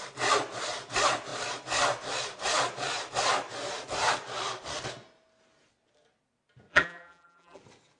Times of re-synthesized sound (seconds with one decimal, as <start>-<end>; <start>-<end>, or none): 6.7-7.6